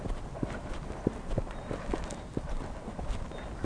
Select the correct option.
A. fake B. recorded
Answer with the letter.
B